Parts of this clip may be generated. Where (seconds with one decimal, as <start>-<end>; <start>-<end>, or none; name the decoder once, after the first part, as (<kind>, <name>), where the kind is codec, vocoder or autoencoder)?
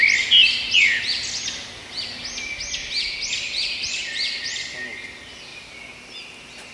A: none